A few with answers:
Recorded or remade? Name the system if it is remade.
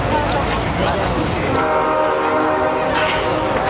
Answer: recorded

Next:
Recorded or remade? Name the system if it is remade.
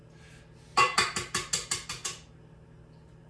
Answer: recorded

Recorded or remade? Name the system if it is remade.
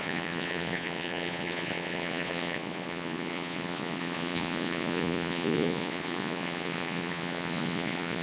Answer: remade, vocoder, Vocos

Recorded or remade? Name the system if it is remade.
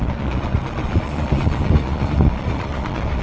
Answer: remade, vocoder, Vocos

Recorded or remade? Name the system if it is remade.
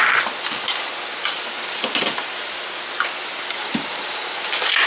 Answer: recorded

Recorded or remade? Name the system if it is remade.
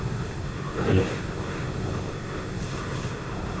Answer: remade, codec, SNAC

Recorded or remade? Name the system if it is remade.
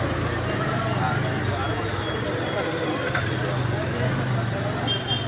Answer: recorded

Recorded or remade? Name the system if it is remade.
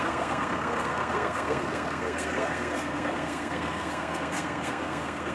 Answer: remade, codec, SNAC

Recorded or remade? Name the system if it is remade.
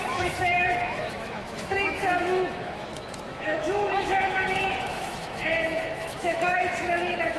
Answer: remade, autoencoder, DAC-VAE